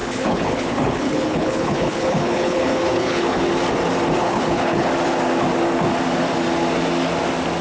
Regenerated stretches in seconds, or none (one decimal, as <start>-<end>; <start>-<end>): 0.0-3.4; 4.2-4.9